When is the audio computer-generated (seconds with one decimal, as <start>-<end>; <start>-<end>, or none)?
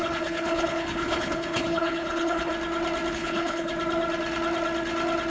0.0-2.5; 3.1-3.7